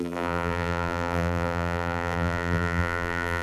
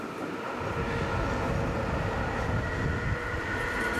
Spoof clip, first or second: first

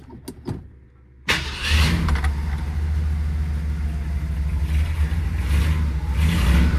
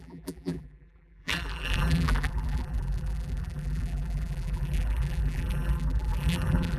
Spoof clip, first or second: second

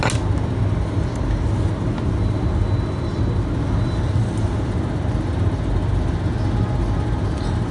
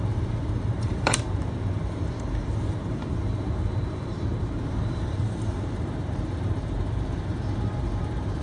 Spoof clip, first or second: second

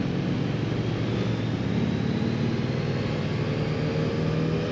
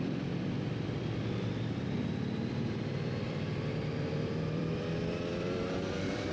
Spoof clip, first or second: second